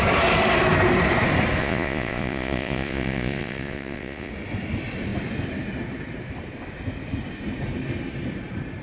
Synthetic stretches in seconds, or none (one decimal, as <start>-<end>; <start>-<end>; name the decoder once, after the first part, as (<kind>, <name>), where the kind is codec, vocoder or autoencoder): 1.6-4.3 (vocoder, Vocos)